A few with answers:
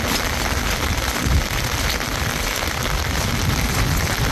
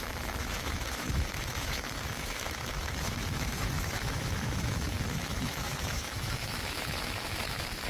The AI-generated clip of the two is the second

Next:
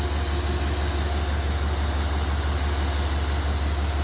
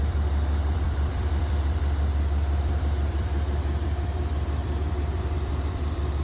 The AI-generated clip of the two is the second